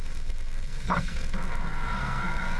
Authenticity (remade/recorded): remade